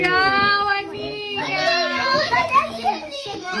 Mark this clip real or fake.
fake